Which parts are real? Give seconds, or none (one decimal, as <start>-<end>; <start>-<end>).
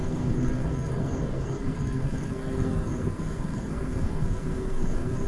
none